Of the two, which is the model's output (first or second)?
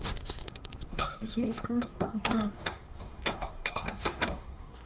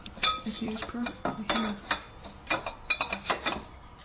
first